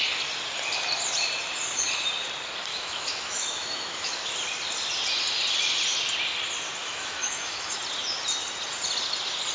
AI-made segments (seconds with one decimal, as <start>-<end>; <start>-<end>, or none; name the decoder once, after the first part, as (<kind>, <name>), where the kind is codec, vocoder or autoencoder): 2.7-4.3 (autoencoder, DAC-VAE); 6.8-7.8